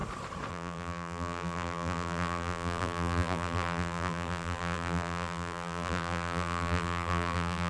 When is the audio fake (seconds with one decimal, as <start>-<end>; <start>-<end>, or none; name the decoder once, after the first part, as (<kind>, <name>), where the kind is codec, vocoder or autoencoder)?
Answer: 0.5-7.7 (vocoder, BigVGAN v2)